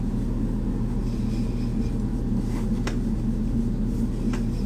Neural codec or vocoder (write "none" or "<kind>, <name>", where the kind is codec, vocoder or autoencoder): none